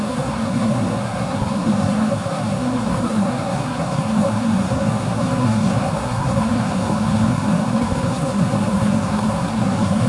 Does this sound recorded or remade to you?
remade